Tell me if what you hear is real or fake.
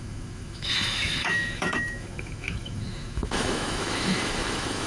fake